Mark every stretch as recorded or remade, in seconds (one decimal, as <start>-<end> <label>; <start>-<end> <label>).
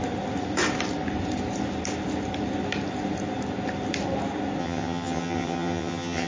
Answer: 0.0-4.6 recorded; 4.6-6.3 remade